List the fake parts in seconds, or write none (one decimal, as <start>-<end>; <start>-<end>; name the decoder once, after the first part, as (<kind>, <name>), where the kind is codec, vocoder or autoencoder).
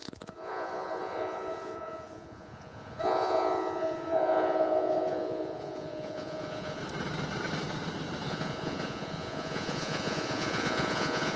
0.0-6.8 (vocoder, Vocos); 8.3-11.4